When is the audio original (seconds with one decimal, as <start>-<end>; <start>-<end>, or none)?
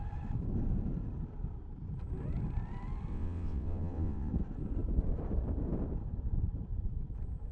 0.0-3.1; 4.3-7.5